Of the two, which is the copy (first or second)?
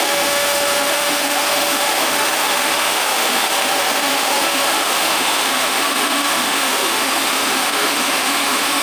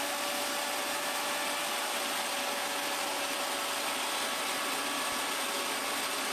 first